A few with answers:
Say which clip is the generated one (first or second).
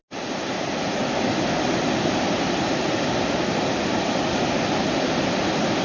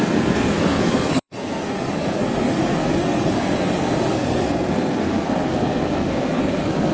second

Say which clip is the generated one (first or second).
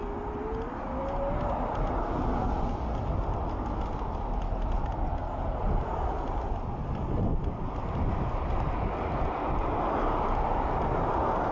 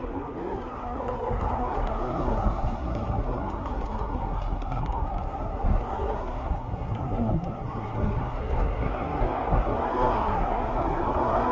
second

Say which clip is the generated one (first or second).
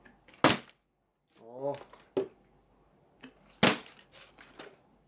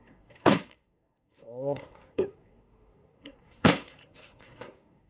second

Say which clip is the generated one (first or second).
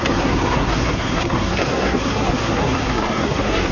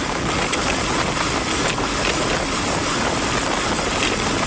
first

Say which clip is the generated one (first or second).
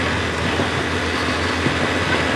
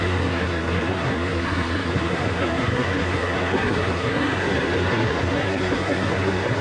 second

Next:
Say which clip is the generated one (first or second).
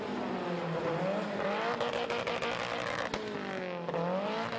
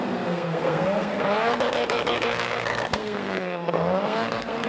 second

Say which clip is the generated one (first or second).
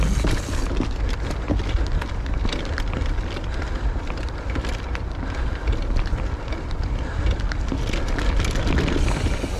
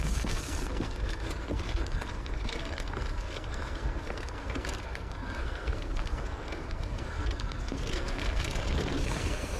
second